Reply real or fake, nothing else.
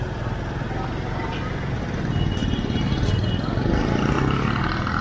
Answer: real